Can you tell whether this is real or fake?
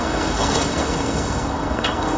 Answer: fake